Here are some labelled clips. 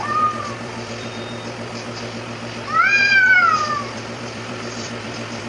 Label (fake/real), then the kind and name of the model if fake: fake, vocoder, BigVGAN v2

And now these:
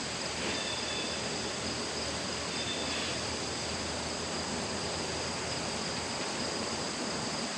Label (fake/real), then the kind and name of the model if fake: fake, vocoder, BigVGAN v2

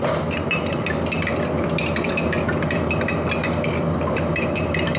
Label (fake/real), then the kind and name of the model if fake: real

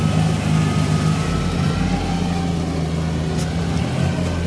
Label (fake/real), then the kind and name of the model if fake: real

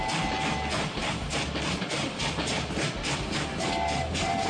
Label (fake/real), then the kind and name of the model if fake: fake, vocoder, BigVGAN v2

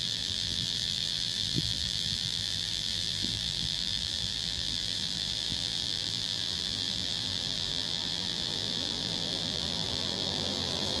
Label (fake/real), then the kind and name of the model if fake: fake, vocoder, BigVGAN v2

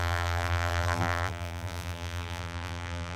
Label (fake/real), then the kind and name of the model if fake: fake, vocoder, BigVGAN v2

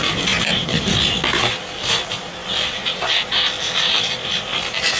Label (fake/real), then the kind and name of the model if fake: real